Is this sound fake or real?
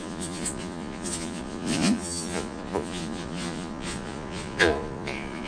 fake